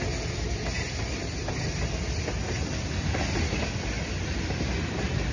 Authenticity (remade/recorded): recorded